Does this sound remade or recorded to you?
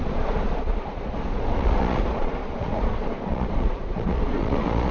remade